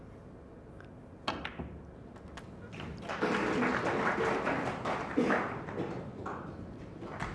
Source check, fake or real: real